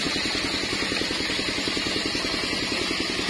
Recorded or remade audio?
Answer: recorded